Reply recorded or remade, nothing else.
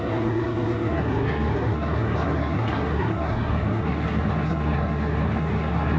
remade